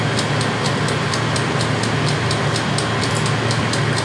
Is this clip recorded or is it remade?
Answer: recorded